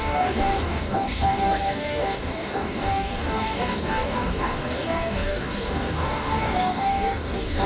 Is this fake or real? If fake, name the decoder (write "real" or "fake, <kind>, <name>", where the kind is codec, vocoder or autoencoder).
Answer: fake, codec, DAC